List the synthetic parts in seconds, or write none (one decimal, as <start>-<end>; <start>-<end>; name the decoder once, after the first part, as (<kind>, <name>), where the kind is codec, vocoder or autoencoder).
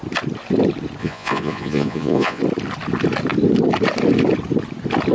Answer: 1.0-2.4 (vocoder, Vocos)